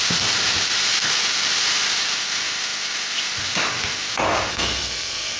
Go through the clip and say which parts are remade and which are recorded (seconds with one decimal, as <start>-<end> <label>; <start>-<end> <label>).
0.0-4.5 recorded; 4.5-5.4 remade